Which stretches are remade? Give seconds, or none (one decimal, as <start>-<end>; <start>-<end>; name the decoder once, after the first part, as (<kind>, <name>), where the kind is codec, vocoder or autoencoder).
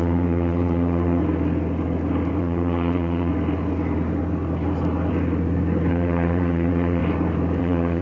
0.0-1.2 (vocoder, Vocos); 2.4-3.3; 5.9-7.0; 7.6-8.0